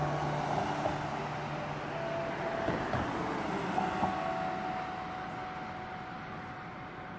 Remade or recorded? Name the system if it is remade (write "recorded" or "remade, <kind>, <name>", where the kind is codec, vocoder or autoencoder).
recorded